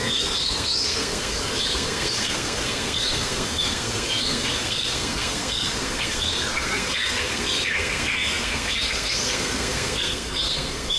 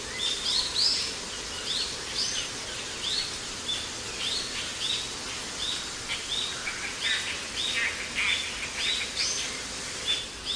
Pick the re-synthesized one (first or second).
first